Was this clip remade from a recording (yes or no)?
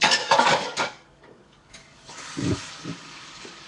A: yes